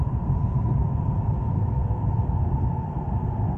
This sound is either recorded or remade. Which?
remade